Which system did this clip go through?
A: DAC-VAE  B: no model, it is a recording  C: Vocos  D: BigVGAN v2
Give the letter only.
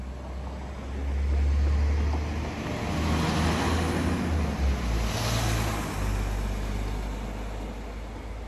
B